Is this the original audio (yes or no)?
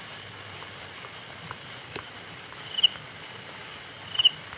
yes